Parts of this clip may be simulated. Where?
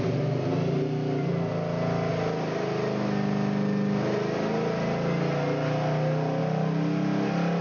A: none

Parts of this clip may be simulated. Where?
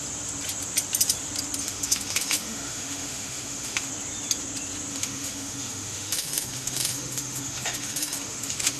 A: 1.6-3.9 (autoencoder, DAC-VAE); 4.9-8.8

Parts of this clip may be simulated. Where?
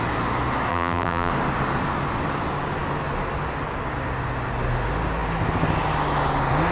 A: 0.7-1.3 (vocoder, BigVGAN v2)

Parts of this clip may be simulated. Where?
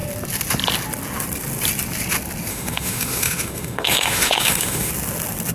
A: 2.5-4.9 (autoencoder, DAC-VAE)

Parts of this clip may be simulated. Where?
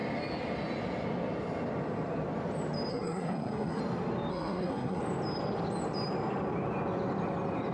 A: 2.9-3.8 (codec, SNAC); 4.3-5.0